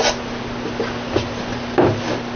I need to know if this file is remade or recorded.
recorded